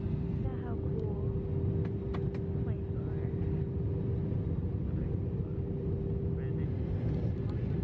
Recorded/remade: recorded